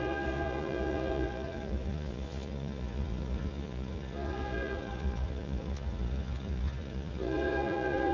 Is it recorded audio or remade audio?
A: remade